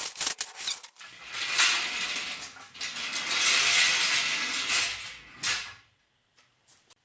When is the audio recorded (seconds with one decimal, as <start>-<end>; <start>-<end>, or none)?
0.0-7.0